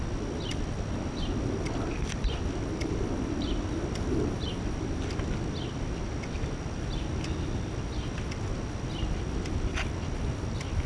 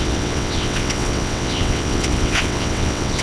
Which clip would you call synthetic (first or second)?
second